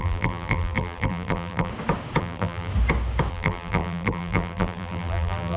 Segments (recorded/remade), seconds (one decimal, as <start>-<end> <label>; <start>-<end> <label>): 0.0-1.7 remade; 1.7-2.2 recorded; 2.2-2.7 remade; 2.7-3.3 recorded; 3.3-5.6 remade